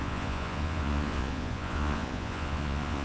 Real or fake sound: fake